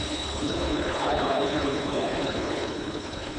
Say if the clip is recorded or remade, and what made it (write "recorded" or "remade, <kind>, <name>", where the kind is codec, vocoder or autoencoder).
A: remade, codec, HILCodec